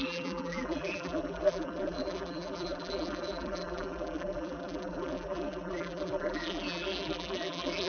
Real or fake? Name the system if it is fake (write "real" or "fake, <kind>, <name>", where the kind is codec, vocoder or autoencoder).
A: fake, vocoder, BigVGAN v2